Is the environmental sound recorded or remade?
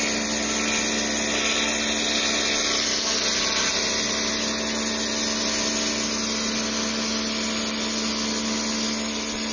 recorded